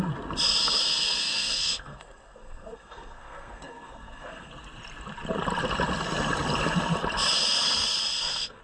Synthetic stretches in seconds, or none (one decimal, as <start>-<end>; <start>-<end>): 0.8-4.5; 8.0-8.6